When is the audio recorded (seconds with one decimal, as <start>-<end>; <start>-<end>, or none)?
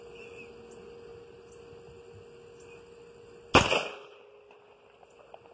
0.0-5.5